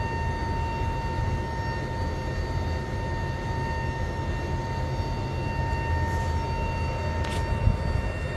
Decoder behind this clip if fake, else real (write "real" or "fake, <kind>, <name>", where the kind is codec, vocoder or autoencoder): real